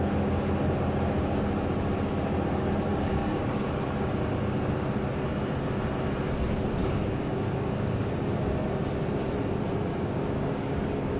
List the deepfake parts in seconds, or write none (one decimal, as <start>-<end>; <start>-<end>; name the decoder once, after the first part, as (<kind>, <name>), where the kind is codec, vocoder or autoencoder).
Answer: 2.9-3.8 (codec, DAC); 6.8-8.1; 9.9-11.2